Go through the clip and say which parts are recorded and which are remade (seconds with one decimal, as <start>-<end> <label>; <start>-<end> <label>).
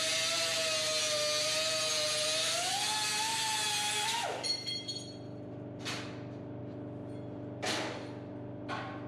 0.0-9.1 recorded